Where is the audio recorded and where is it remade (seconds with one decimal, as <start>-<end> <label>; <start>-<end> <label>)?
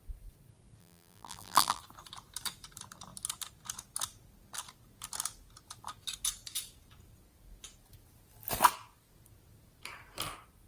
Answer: 0.0-0.8 recorded; 0.8-1.8 remade; 1.8-10.7 recorded